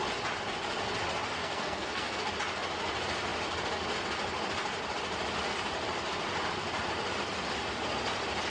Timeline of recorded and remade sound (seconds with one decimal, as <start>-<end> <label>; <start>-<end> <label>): 0.0-1.4 recorded; 1.4-2.3 remade; 2.3-8.5 recorded